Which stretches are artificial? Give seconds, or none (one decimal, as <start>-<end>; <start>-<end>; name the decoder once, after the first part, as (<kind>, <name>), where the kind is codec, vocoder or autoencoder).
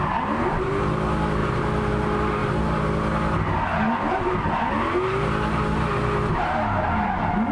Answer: 1.4-1.9 (vocoder, BigVGAN v2)